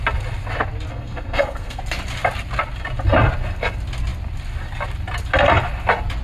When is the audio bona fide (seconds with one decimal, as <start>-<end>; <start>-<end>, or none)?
0.0-0.9; 1.8-6.2